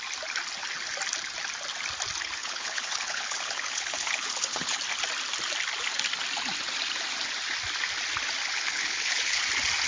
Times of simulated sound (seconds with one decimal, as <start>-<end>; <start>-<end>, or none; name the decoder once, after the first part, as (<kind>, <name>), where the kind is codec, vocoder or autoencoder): 2.4-4.8 (codec, HILCodec); 8.6-9.4